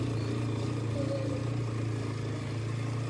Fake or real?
real